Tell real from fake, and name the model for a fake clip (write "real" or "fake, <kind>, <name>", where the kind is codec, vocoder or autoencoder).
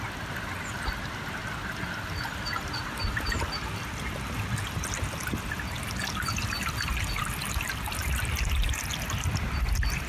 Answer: real